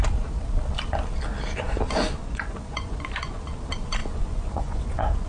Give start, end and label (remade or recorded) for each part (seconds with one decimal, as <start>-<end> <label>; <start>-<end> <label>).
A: 0.0-2.2 recorded; 2.2-3.4 remade; 3.4-4.0 recorded; 4.0-5.3 remade